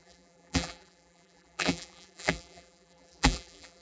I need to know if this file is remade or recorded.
remade